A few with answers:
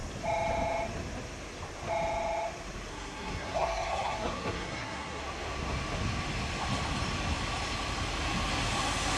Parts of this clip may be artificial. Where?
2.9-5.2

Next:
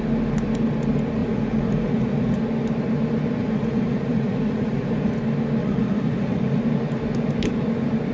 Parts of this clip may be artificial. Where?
1.2-2.4; 3.4-5.1; 5.6-6.6

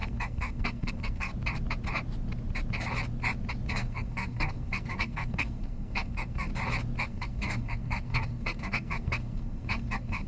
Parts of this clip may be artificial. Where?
0.0-1.3; 3.7-6.5; 7.0-10.3